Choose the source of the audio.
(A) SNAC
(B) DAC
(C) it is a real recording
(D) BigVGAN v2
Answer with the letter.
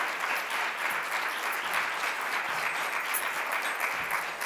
C